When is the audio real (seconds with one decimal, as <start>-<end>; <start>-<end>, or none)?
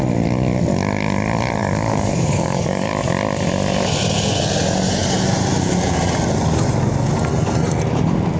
0.0-1.6; 2.9-8.4